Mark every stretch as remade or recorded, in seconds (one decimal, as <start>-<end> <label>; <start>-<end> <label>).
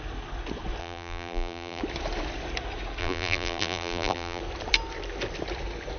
0.0-0.8 recorded; 0.8-1.8 remade; 1.8-3.0 recorded; 3.0-4.4 remade; 4.4-6.0 recorded